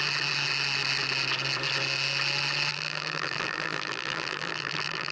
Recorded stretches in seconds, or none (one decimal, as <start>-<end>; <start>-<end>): 0.0-2.7